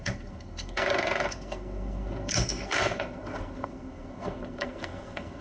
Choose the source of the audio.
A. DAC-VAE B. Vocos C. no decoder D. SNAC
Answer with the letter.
D